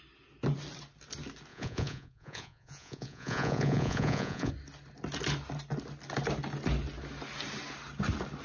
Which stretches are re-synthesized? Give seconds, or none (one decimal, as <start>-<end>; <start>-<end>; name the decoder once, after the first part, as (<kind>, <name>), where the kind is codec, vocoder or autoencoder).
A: 1.5-4.5 (vocoder, Vocos)